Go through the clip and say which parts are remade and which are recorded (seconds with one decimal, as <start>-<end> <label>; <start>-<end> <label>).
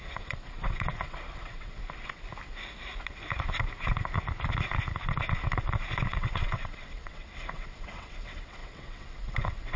0.0-1.8 remade; 1.8-6.1 recorded; 6.1-9.8 remade